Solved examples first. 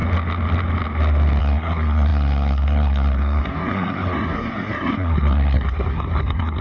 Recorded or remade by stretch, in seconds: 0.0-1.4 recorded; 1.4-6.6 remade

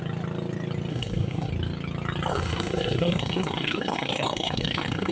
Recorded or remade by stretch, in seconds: 0.0-0.9 recorded; 0.9-1.5 remade; 1.5-2.3 recorded; 2.3-5.1 remade